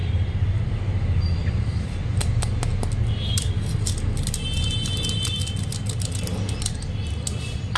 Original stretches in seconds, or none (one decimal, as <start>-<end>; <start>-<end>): 0.0-7.8